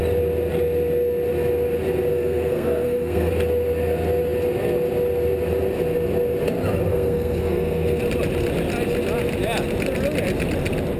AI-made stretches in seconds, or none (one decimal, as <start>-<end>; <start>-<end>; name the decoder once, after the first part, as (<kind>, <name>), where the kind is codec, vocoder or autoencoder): 2.1-3.3 (codec, SNAC); 6.9-8.0